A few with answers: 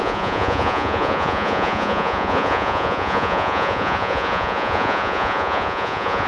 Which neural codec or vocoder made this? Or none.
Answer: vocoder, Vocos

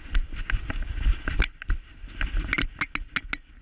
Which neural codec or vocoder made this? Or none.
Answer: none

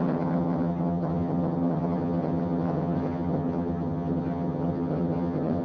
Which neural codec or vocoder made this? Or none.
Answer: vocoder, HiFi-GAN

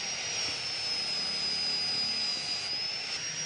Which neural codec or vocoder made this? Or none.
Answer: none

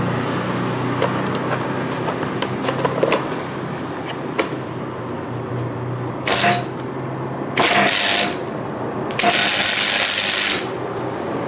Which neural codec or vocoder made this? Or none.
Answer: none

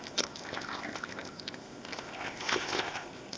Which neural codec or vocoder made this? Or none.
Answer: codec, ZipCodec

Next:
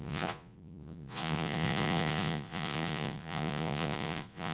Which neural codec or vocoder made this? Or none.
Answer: vocoder, Vocos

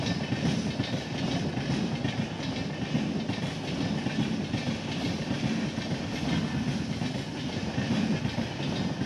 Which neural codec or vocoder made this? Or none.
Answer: none